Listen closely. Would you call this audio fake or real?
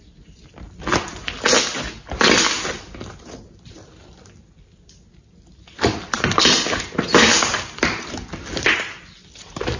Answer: real